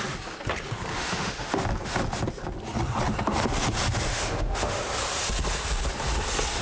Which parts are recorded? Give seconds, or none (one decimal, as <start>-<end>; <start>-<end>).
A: 0.0-0.9; 1.6-4.1; 4.8-6.6